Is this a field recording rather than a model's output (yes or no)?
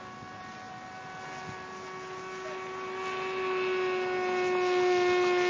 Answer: yes